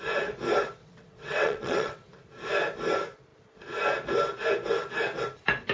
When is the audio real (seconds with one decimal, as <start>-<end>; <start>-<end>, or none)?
0.0-0.8; 2.1-5.7